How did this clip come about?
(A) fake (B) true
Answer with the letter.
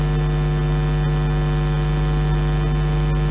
B